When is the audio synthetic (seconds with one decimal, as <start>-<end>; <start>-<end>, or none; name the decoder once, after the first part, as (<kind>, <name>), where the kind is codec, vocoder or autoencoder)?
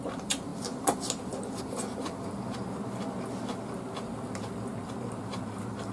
none